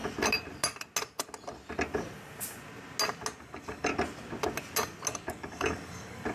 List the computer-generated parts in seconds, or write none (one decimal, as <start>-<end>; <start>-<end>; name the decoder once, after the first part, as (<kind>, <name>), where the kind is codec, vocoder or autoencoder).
3.4-3.9 (codec, DAC); 5.3-6.3